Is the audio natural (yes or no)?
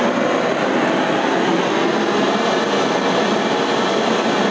yes